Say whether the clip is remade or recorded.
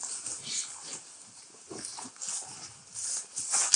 recorded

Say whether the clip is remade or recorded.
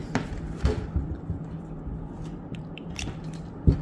recorded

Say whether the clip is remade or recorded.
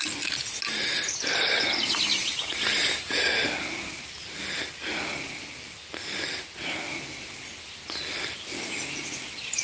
recorded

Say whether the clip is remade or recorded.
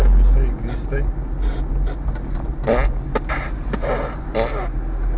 recorded